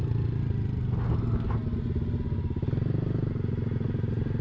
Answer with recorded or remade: recorded